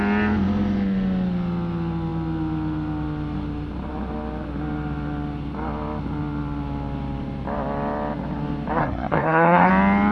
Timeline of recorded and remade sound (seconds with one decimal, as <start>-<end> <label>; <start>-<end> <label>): 0.0-8.8 recorded; 8.8-9.7 remade; 9.7-10.1 recorded